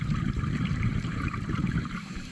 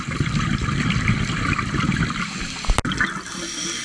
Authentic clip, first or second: second